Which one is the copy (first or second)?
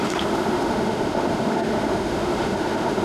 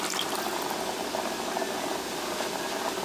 first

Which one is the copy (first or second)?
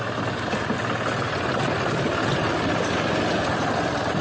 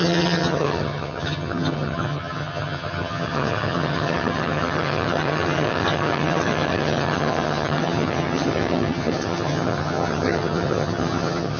second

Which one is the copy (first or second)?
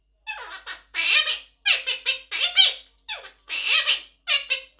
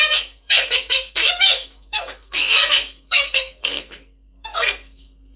second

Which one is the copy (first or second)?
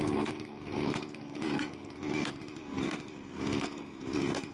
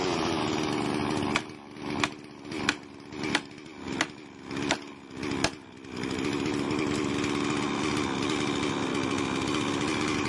first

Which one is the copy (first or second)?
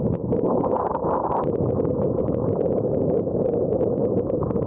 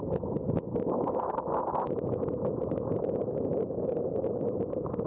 first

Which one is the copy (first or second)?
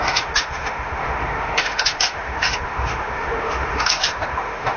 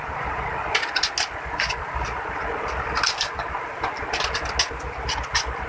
first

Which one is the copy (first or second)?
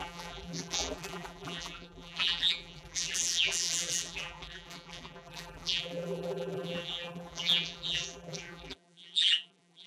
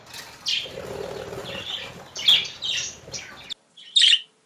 first